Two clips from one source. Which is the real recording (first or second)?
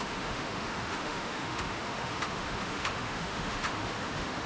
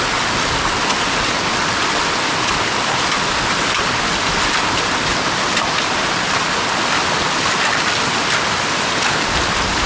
second